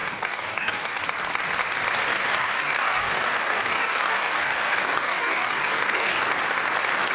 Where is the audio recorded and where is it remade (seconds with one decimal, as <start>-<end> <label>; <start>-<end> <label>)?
0.0-1.0 remade; 1.0-2.1 recorded; 2.1-6.2 remade; 6.2-7.1 recorded